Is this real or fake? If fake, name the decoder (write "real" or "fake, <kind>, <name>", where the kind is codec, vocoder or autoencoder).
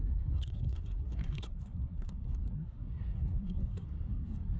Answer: fake, codec, SNAC